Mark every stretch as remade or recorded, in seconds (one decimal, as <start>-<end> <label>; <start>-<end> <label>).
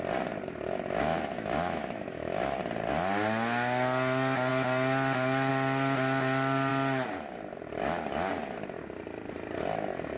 0.0-1.1 recorded; 1.1-2.6 remade; 2.6-10.2 recorded